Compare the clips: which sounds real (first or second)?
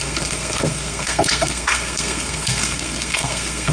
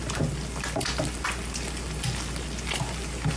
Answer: second